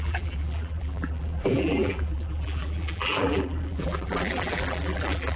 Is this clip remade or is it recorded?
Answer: remade